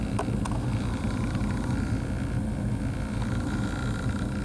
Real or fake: real